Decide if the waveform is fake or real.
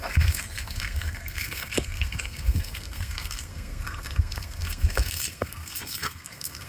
fake